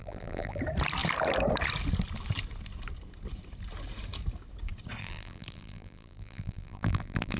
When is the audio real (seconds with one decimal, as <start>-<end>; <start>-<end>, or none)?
0.6-5.0